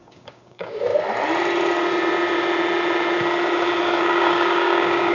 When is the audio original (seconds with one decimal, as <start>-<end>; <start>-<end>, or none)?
0.9-4.0

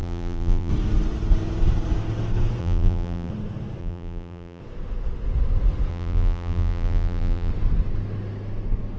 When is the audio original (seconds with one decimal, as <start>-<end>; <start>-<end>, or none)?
0.7-2.6; 3.3-3.8; 4.6-5.9; 7.5-9.0

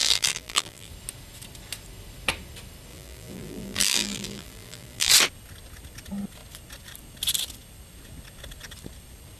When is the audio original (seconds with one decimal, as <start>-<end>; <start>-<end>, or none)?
0.9-2.9; 5.1-9.4

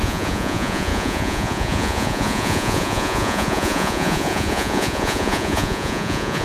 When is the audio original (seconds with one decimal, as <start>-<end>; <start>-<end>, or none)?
none

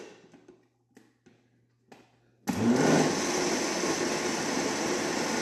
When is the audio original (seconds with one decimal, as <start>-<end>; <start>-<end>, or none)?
0.0-5.4